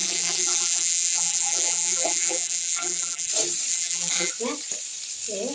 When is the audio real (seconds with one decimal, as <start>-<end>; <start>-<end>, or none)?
3.3-3.7; 4.3-5.5